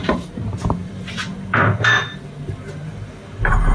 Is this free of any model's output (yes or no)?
no